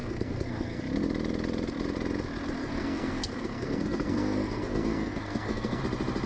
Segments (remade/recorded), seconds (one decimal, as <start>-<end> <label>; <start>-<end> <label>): 0.0-0.8 remade; 0.8-2.6 recorded; 2.6-5.8 remade; 5.8-6.3 recorded

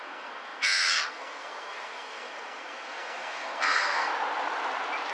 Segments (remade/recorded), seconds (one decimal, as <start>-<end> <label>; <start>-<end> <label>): 0.0-4.1 remade; 4.1-5.1 recorded

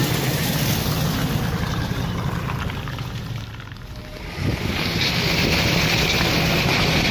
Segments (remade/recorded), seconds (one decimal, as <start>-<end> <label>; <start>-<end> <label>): 0.0-7.1 recorded

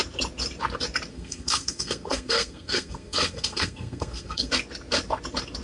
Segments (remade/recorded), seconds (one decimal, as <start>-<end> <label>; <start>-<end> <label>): 0.0-1.1 recorded; 1.1-4.5 remade; 4.5-5.6 recorded